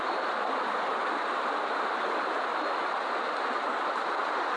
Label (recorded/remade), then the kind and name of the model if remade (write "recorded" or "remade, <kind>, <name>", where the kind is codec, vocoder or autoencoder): recorded